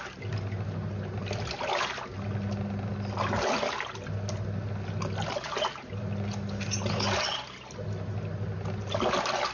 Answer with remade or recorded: recorded